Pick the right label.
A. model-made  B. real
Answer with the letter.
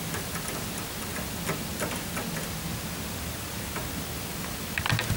B